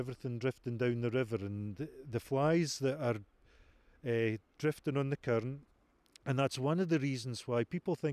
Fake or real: real